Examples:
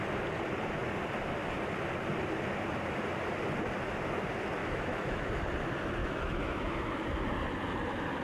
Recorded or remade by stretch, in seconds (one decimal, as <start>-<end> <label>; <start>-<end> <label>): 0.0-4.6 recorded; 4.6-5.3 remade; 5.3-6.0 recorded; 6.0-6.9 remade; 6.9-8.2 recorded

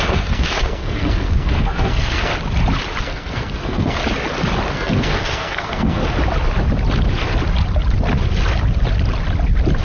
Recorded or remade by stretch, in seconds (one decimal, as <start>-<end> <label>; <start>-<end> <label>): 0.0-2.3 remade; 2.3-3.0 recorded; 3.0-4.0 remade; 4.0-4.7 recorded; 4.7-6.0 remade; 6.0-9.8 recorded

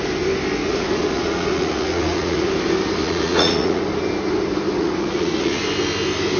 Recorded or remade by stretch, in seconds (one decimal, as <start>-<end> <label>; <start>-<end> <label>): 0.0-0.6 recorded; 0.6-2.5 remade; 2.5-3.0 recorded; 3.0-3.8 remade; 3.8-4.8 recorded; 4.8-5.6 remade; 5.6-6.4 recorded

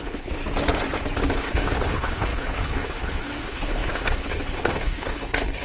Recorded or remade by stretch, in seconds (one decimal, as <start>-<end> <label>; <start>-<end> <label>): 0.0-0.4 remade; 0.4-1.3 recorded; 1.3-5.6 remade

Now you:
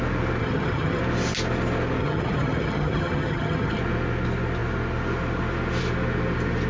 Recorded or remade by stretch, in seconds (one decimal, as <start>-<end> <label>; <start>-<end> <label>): 0.0-0.4 recorded; 0.4-1.0 remade; 1.0-2.0 recorded; 2.0-3.8 remade; 3.8-6.7 recorded